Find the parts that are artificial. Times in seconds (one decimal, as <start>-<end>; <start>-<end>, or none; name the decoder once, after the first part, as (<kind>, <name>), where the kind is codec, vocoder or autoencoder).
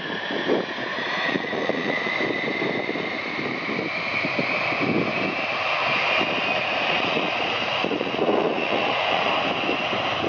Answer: 0.9-2.1 (vocoder, Vocos); 6.5-9.3